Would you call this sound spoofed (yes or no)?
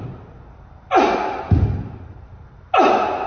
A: no